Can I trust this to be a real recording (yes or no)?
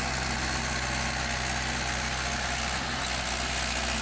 yes